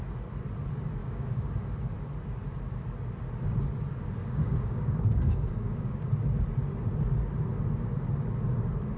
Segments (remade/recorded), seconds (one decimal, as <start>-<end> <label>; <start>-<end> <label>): 0.0-1.0 recorded; 1.0-1.5 remade; 1.5-4.2 recorded; 4.2-6.0 remade; 6.0-9.0 recorded